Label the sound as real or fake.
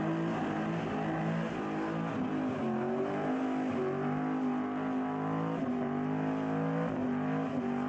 real